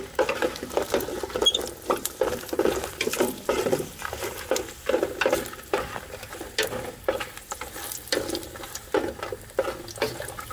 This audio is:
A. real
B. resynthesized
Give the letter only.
A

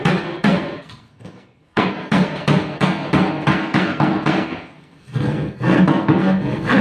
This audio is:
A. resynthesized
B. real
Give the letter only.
A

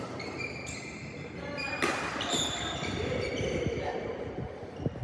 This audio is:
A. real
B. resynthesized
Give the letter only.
A